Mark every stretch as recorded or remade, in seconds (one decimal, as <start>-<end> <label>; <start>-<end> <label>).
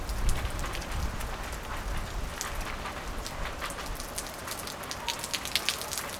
0.0-6.2 recorded